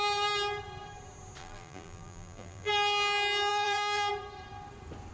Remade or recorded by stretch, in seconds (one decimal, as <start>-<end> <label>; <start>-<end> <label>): 0.0-1.4 recorded; 1.4-2.7 remade; 2.7-3.5 recorded; 3.5-4.1 remade; 4.1-5.1 recorded